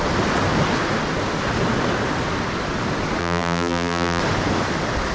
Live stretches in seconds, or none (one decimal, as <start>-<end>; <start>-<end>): 0.0-3.2; 4.2-5.1